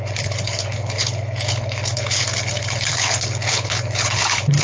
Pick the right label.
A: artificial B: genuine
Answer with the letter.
A